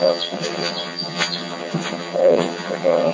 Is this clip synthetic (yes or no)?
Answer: yes